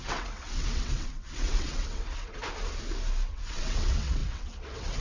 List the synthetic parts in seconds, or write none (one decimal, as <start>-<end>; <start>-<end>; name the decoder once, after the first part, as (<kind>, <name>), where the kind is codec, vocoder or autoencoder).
0.0-2.4 (vocoder, WaveNeXt); 3.3-5.0